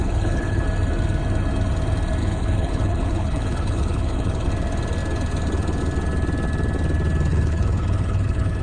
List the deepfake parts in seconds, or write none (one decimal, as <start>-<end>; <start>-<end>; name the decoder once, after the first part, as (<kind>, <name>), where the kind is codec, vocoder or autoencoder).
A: 0.0-0.6 (codec, HILCodec); 2.2-4.5; 7.3-8.6